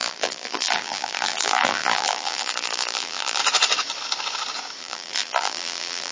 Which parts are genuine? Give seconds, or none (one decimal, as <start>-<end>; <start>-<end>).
3.4-4.8